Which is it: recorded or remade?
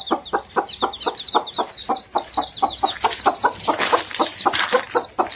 recorded